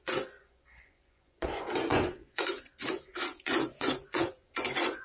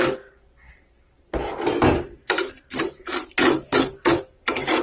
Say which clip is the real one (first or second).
second